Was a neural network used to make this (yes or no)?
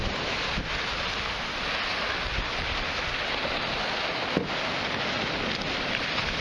no